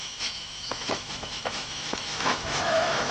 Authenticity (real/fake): fake